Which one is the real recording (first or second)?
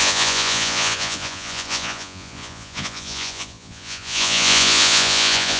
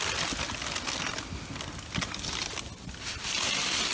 second